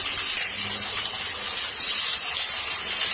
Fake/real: real